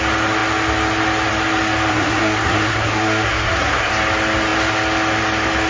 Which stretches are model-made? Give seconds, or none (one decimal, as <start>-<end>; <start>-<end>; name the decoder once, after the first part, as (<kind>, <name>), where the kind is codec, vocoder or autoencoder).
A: 1.9-3.9 (codec, SNAC)